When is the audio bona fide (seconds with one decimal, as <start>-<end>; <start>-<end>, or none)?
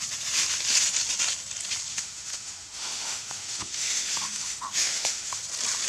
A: 0.0-1.9; 5.4-5.9